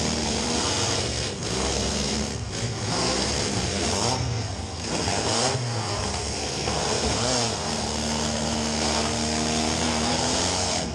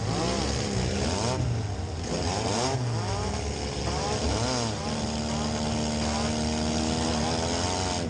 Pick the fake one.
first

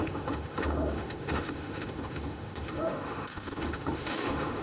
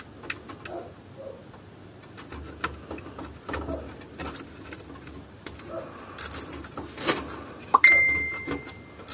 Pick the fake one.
first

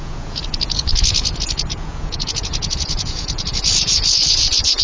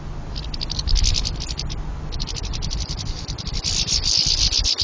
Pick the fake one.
first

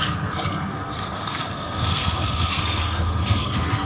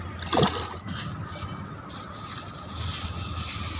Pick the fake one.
first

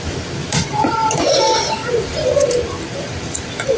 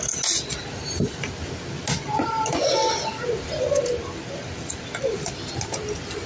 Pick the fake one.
first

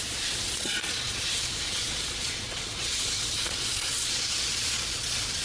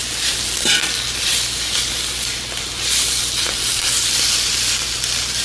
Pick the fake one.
first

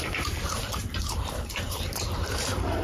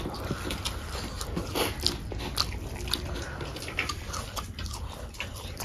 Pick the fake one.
first